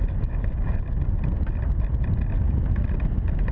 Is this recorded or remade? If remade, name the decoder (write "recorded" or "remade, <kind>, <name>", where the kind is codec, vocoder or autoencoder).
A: recorded